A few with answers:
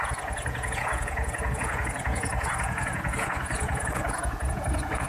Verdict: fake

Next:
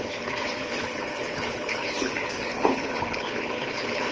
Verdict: fake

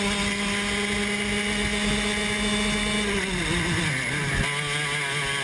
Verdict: real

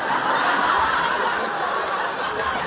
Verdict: real